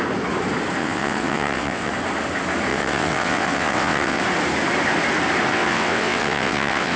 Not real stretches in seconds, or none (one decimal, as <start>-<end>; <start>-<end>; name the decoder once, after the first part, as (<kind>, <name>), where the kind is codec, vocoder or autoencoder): 0.8-1.9 (vocoder, WaveNeXt); 2.7-4.2; 5.5-7.0